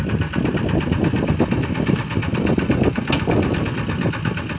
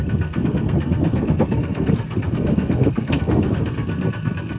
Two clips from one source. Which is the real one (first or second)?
first